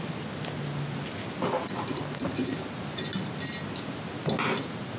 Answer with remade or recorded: recorded